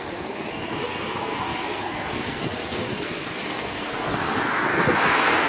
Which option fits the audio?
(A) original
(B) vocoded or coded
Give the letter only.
B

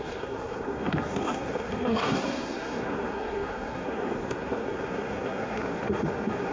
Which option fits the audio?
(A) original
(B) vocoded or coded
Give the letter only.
B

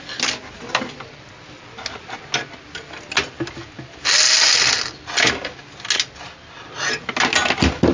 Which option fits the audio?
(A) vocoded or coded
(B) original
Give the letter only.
B